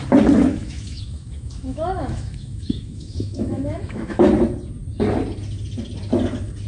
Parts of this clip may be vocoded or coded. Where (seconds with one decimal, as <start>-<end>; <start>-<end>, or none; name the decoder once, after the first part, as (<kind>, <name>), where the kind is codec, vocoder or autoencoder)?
0.5-4.3 (autoencoder, DAC-VAE)